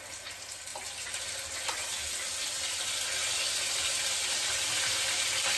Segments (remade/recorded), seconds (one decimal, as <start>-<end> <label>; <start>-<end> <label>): 0.0-5.6 recorded